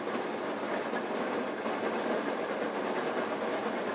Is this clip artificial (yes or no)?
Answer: no